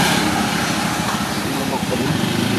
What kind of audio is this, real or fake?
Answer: fake